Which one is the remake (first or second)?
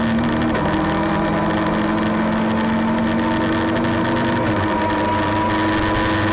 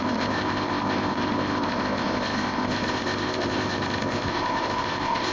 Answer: second